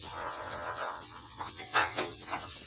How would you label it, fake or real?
fake